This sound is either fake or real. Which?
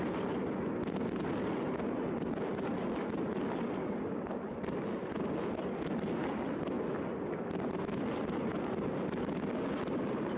real